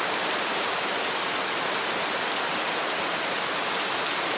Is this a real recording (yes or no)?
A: yes